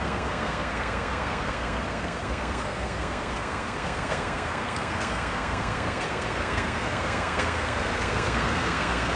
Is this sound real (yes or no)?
no